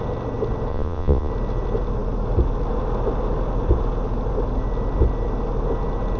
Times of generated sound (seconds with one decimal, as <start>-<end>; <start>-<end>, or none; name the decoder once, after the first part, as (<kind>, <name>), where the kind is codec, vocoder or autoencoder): 0.7-1.3 (vocoder, Vocos)